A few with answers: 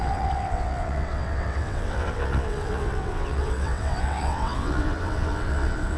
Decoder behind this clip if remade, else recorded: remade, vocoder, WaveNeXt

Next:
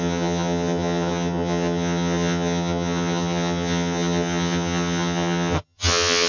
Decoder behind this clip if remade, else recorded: remade, vocoder, HiFi-GAN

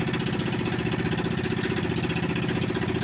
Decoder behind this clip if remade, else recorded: recorded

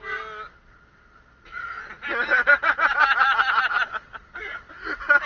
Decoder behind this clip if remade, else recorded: recorded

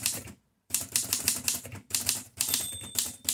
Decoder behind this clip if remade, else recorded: remade, vocoder, BigVGAN v2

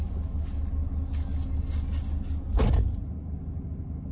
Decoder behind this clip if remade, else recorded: recorded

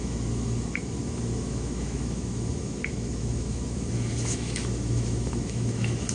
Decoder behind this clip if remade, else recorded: remade, autoencoder, DAC-VAE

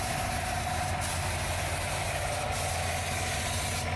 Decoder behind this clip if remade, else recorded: recorded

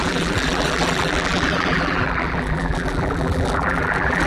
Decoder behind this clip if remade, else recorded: remade, vocoder, BigVGAN v2